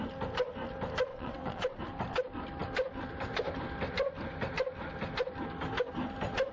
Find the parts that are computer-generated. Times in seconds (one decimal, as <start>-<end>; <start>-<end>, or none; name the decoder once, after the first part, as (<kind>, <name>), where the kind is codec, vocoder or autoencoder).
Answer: 1.1-1.8 (vocoder, WaveNeXt)

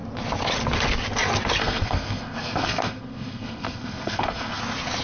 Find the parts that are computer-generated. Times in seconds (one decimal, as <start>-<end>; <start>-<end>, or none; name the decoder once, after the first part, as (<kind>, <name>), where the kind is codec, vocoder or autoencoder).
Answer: 1.6-4.6 (codec, SNAC)